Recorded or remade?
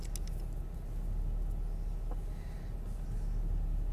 recorded